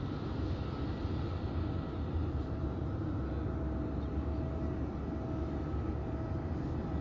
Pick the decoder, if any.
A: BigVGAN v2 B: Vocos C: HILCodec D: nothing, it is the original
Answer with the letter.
D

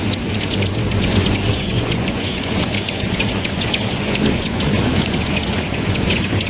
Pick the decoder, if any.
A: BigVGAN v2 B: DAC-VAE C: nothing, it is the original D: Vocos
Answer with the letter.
D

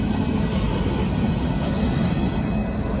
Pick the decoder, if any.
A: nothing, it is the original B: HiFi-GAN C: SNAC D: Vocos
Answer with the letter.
A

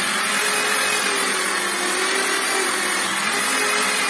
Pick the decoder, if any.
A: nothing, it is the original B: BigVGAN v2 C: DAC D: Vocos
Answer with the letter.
A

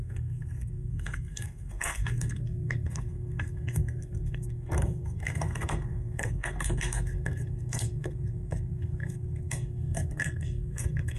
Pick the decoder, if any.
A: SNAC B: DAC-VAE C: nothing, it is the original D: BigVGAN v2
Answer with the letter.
A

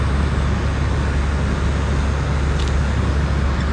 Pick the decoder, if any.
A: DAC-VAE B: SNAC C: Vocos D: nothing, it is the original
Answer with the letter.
D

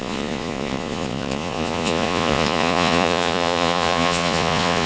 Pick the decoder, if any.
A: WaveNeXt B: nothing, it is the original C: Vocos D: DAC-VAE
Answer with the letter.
C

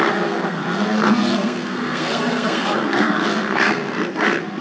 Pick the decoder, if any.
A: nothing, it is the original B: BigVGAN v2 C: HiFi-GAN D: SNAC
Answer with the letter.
D